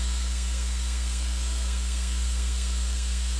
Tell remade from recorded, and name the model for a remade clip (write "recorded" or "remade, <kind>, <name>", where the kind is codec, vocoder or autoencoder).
remade, codec, SNAC